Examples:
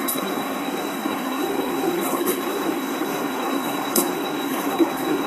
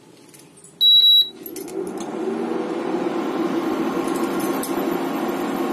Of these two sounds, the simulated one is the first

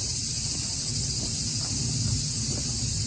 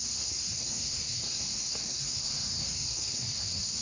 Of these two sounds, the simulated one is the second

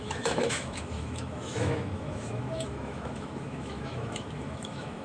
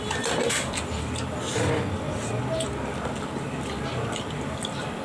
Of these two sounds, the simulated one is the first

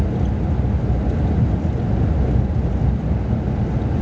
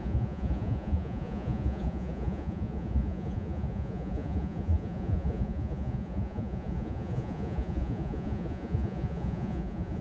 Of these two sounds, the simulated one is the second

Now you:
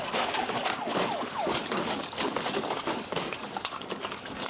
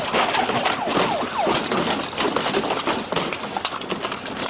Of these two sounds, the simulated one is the first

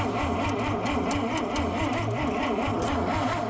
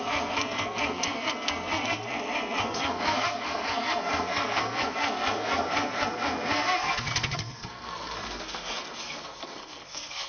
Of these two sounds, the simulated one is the second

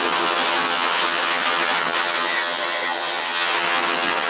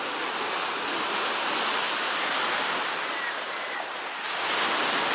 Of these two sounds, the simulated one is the first